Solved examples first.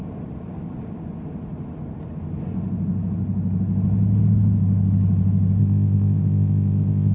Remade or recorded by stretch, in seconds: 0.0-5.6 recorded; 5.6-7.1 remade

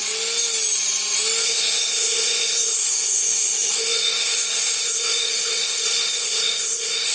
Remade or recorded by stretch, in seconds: 0.0-1.4 recorded; 1.4-7.1 remade

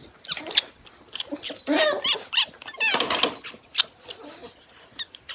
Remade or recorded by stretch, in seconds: 0.0-5.3 recorded

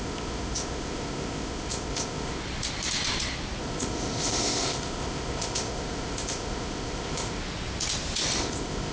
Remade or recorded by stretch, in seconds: 0.0-2.4 remade; 2.4-3.6 recorded; 3.6-7.4 remade; 7.4-8.4 recorded; 8.4-8.9 remade

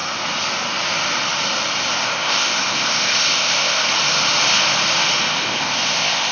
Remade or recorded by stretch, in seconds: 0.0-2.0 recorded; 2.0-3.9 remade; 3.9-5.3 recorded; 5.3-6.3 remade

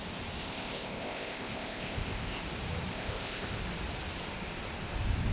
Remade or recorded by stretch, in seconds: 0.0-0.4 recorded; 0.4-2.4 remade; 2.4-2.9 recorded; 2.9-3.6 remade; 3.6-5.3 recorded